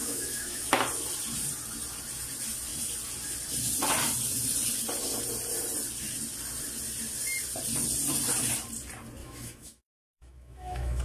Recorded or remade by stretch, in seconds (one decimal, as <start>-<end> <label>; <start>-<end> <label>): 0.0-0.7 remade; 0.7-9.2 recorded; 9.2-11.0 remade